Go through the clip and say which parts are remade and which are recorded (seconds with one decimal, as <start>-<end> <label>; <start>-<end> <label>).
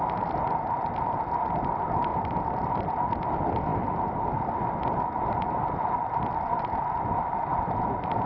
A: 0.0-2.1 recorded; 2.1-2.9 remade; 2.9-8.3 recorded